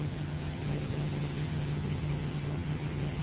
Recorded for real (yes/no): no